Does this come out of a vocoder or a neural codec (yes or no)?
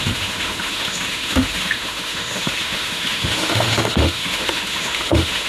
yes